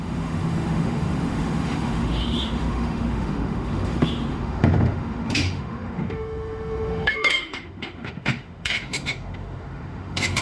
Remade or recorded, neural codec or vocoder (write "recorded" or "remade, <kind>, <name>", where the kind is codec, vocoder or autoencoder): remade, autoencoder, DAC-VAE